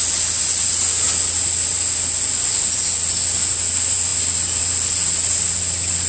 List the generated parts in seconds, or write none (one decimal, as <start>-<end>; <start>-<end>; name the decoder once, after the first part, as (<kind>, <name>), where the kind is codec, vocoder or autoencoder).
none